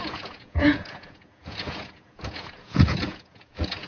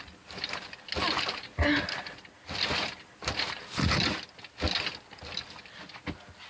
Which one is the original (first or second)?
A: second